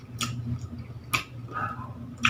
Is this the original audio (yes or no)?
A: yes